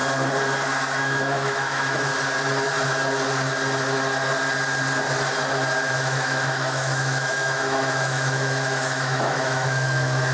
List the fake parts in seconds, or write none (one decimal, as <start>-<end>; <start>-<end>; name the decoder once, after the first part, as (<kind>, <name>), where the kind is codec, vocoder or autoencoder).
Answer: 1.0-2.1 (autoencoder, DAC-VAE); 5.9-10.3